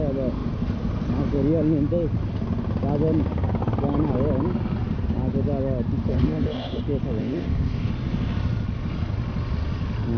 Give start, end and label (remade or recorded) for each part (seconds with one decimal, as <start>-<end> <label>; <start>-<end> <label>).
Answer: 0.0-6.1 recorded; 6.1-6.8 remade; 6.8-7.2 recorded; 7.2-7.9 remade; 7.9-10.2 recorded